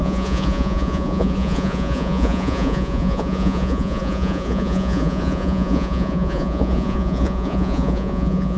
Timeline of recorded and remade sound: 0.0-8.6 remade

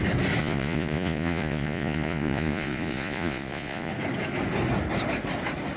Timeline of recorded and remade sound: 0.0-0.4 recorded; 0.4-3.9 remade; 3.9-5.8 recorded

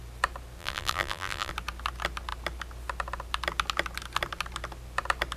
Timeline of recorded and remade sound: 0.0-0.6 recorded; 0.6-1.5 remade; 1.5-5.4 recorded

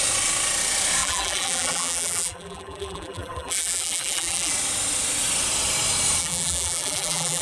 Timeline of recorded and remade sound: 0.0-1.0 recorded; 1.0-4.5 remade; 4.5-6.2 recorded; 6.2-7.4 remade

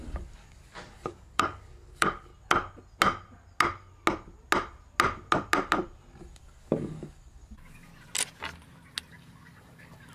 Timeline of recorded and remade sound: 0.0-2.3 remade; 2.3-6.2 recorded; 6.2-7.9 remade; 7.9-9.1 recorded; 9.1-10.1 remade